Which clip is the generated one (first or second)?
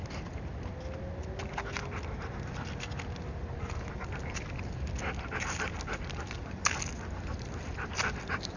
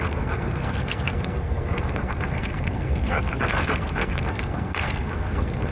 second